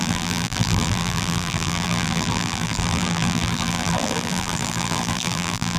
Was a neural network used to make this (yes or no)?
yes